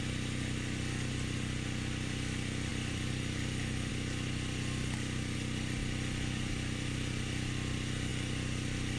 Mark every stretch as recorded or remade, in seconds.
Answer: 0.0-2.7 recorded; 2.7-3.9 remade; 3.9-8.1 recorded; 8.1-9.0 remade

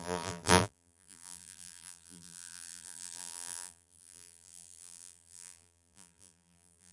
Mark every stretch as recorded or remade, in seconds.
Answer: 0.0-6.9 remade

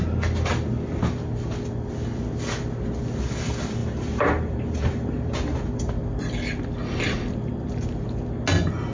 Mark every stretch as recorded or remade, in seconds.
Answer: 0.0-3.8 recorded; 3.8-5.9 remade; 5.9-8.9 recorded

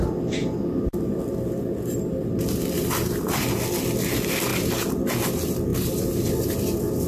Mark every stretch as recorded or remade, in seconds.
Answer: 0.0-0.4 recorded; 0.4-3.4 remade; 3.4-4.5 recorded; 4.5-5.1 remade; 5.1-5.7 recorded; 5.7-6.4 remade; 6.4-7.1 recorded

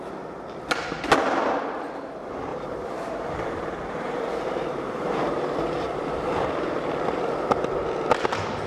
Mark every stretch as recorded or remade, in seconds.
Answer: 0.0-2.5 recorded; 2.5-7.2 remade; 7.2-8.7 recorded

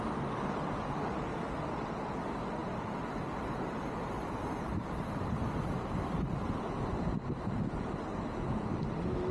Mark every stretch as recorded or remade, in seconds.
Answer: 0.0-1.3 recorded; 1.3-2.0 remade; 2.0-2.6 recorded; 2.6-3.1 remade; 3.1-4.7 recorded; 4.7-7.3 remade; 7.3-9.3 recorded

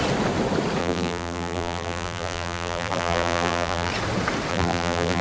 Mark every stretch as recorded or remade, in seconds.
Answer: 0.0-0.8 recorded; 0.8-3.9 remade; 3.9-4.5 recorded; 4.5-5.2 remade